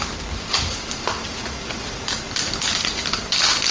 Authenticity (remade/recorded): recorded